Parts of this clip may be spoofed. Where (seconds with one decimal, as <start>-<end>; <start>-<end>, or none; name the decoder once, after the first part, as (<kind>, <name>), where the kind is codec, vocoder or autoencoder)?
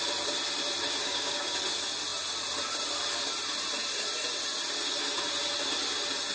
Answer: 1.0-1.6 (codec, DAC)